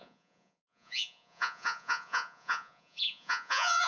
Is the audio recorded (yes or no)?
no